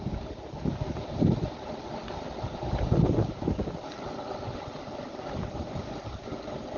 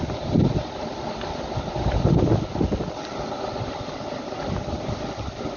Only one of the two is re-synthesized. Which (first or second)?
first